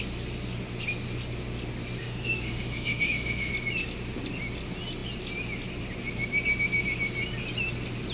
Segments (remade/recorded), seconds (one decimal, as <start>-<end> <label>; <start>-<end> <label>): 0.0-2.0 recorded; 2.0-3.5 remade; 3.5-8.1 recorded